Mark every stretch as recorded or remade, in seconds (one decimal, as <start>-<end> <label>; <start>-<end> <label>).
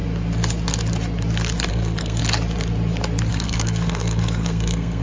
0.0-1.7 recorded; 1.7-2.2 remade; 2.2-3.3 recorded; 3.3-5.0 remade